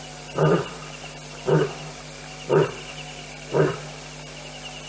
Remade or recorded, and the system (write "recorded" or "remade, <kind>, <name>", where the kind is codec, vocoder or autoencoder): recorded